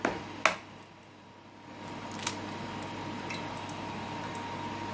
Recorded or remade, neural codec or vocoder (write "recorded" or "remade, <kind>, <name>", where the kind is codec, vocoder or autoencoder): recorded